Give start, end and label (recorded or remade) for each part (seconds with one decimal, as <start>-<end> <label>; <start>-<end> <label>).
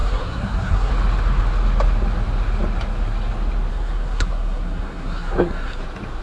0.0-0.9 remade; 0.9-3.7 recorded; 3.7-5.8 remade; 5.8-6.2 recorded